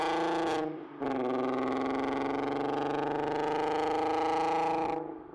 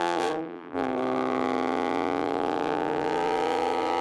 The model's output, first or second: second